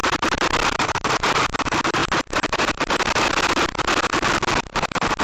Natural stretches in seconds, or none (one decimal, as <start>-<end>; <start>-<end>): 1.4-5.2